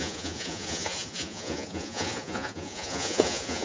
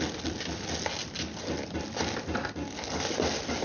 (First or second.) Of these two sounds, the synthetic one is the first